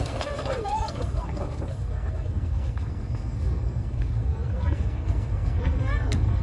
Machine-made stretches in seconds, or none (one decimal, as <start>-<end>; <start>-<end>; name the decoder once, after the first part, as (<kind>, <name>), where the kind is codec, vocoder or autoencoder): 0.0-6.4 (codec, SNAC)